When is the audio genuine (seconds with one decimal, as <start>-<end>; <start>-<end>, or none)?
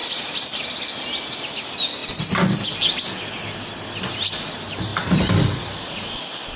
0.6-6.6